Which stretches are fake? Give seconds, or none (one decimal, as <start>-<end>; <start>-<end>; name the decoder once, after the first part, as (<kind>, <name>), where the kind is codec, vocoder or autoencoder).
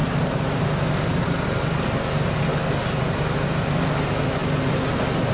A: 0.0-0.6 (vocoder, BigVGAN v2)